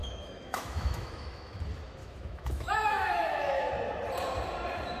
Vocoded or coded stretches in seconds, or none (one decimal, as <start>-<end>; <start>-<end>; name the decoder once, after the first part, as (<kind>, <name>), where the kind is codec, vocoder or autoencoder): 0.0-1.6 (autoencoder, DAC-VAE); 2.0-3.7